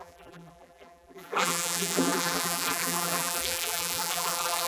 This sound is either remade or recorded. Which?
remade